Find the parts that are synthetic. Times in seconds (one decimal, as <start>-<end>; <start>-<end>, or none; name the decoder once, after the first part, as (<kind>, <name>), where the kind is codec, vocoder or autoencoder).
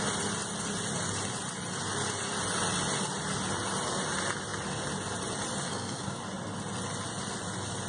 5.7-6.2 (codec, SNAC)